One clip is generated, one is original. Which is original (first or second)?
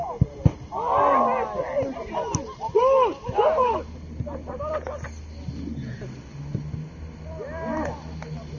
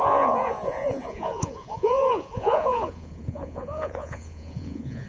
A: first